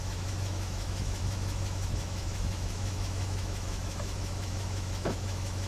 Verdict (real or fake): fake